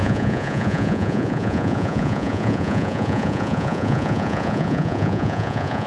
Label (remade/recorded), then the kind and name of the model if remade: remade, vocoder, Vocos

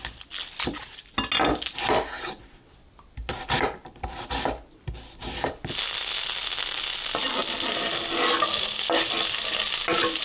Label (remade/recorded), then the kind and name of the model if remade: recorded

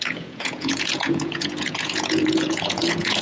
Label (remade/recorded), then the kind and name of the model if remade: remade, vocoder, Vocos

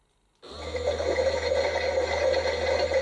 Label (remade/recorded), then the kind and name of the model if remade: recorded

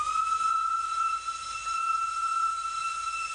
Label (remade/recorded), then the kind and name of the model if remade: remade, vocoder, Vocos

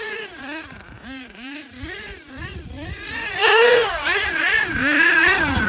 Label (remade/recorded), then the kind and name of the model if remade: remade, vocoder, Vocos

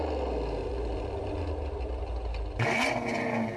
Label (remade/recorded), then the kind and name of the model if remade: recorded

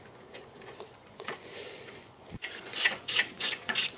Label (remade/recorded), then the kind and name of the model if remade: remade, vocoder, Vocos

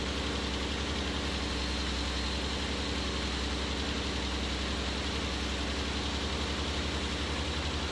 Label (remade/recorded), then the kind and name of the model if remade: recorded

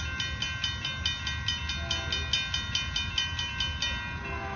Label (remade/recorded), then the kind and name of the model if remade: recorded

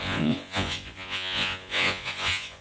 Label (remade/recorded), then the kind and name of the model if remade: remade, vocoder, Vocos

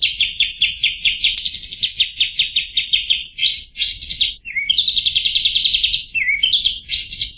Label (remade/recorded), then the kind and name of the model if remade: recorded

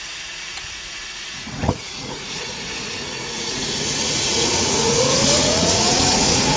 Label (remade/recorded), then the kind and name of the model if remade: remade, vocoder, Vocos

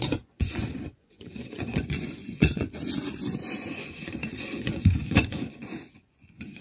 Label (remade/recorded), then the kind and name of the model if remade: remade, vocoder, Vocos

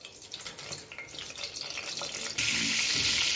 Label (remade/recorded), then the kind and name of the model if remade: recorded